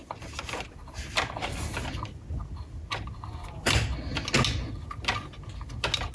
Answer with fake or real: real